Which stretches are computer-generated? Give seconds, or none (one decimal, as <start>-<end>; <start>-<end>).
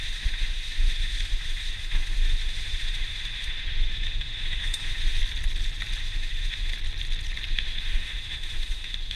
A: 0.0-5.2; 6.0-6.7; 7.5-9.2